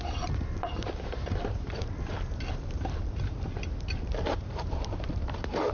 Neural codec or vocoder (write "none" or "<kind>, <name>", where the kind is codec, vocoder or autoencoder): vocoder, BigVGAN v2